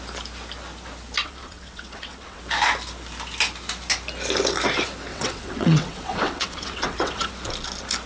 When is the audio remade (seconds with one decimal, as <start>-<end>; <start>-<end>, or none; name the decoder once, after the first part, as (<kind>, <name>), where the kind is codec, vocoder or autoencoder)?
1.2-2.4 (vocoder, WaveNeXt); 5.1-7.3